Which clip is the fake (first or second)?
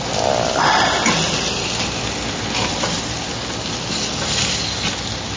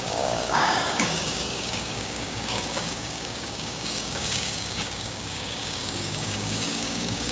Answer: second